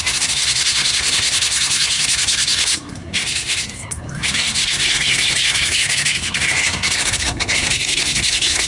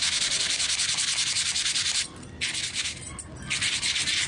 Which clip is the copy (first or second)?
first